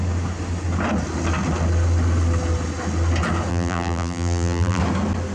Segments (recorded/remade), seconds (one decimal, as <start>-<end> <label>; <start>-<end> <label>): 0.0-3.5 recorded; 3.5-4.8 remade; 4.8-5.3 recorded